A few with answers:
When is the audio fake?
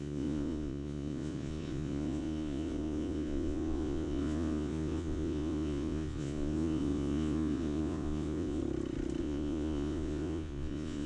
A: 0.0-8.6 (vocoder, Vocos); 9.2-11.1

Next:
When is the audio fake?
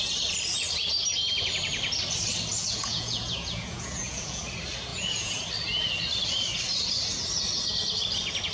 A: 2.6-4.4 (vocoder, Vocos); 4.9-5.5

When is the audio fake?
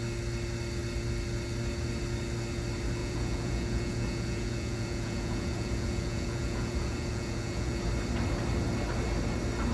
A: 3.0-7.8 (vocoder, Vocos)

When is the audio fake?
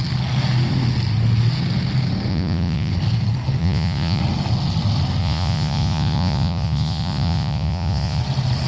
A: 2.3-2.9 (vocoder, Vocos); 3.6-4.2; 5.2-8.2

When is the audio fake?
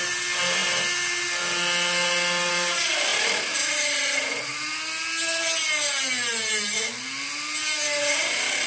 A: none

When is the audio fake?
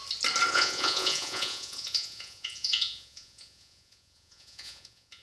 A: 0.5-5.2 (vocoder, Vocos)